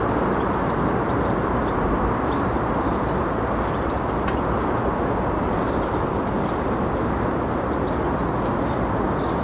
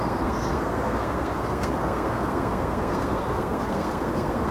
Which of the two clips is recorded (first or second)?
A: first